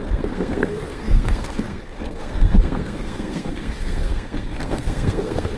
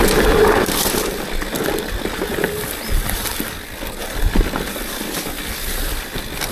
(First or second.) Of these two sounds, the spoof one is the first